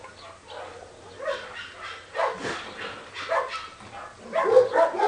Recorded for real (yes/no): yes